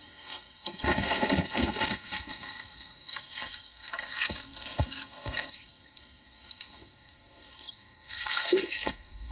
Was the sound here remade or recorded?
remade